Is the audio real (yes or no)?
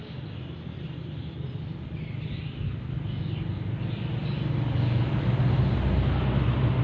yes